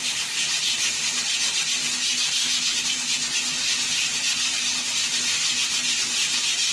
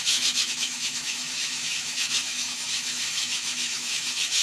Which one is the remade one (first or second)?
second